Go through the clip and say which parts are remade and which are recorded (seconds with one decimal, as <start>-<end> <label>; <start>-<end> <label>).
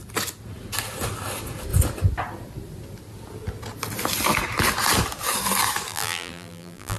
0.0-5.9 recorded; 5.9-7.0 remade